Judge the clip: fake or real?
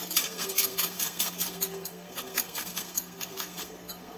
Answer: fake